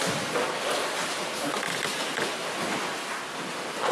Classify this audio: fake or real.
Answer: real